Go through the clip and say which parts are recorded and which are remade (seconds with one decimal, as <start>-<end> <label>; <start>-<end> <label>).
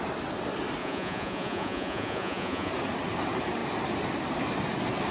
0.0-0.8 recorded; 0.8-2.7 remade; 2.7-5.1 recorded